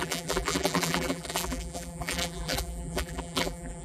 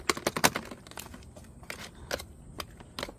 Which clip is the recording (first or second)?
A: second